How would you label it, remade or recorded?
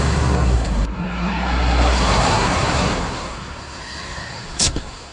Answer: remade